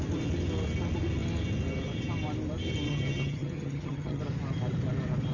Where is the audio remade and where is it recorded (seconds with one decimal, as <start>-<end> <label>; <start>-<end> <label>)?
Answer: 0.0-2.9 recorded; 2.9-4.2 remade; 4.2-5.3 recorded